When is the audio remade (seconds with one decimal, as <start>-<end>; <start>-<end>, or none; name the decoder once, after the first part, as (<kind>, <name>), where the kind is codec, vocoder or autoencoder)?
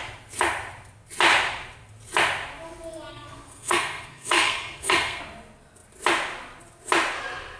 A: 3.1-5.2 (codec, SNAC)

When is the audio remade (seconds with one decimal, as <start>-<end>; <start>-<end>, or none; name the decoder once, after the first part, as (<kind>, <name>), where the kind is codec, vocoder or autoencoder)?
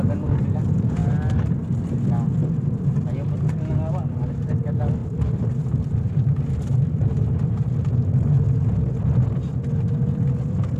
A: 5.0-7.7 (vocoder, BigVGAN v2)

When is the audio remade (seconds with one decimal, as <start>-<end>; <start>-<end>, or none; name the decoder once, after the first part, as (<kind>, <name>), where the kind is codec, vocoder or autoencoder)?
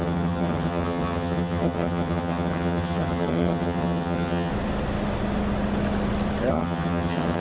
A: 0.0-4.5 (vocoder, HiFi-GAN); 6.5-7.4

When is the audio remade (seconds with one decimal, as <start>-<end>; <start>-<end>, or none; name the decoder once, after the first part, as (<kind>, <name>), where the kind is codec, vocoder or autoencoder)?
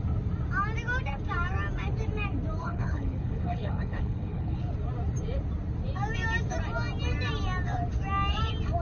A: 2.6-4.7 (codec, HILCodec)